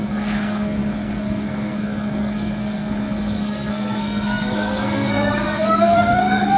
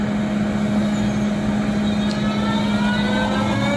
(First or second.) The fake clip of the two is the first